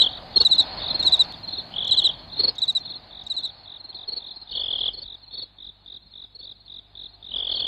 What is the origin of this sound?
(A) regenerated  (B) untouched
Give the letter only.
B